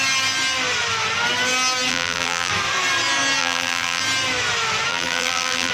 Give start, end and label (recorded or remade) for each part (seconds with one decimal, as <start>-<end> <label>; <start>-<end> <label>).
0.0-1.9 recorded; 1.9-2.5 remade; 2.5-3.4 recorded; 3.4-4.0 remade; 4.0-4.9 recorded; 4.9-5.7 remade